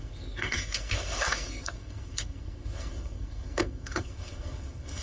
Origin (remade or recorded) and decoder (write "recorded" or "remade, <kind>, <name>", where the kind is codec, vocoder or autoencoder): remade, codec, SNAC